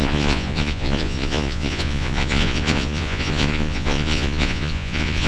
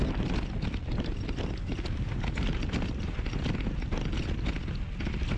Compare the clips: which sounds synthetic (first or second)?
first